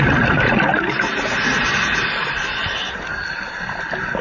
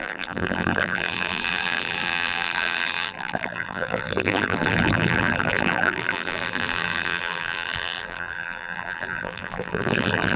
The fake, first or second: second